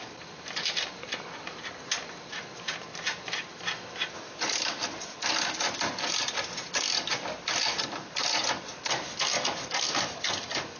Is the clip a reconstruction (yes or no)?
no